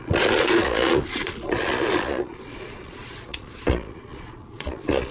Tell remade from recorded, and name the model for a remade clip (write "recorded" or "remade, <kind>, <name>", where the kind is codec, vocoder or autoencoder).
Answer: remade, vocoder, Vocos